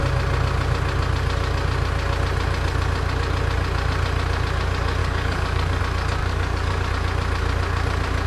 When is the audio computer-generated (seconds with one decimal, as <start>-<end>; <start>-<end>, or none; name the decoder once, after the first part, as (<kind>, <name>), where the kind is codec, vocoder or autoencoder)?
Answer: 5.0-5.8 (codec, DAC); 6.2-6.9